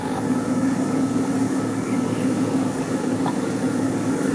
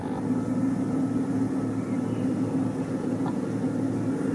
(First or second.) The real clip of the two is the second